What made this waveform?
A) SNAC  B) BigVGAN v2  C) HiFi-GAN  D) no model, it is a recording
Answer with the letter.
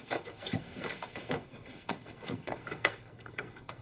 A